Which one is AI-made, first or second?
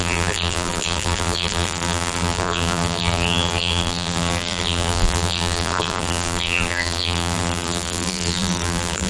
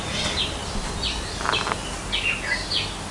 first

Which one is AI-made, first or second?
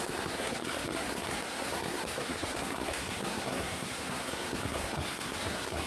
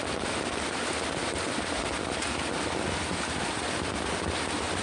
first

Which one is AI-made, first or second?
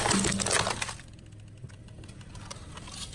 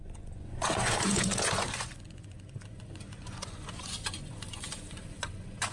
second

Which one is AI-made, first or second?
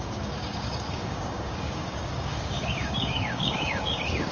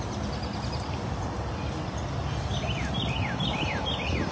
first